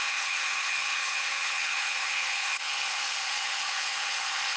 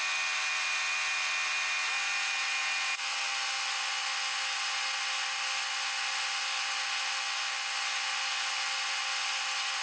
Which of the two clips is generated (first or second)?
first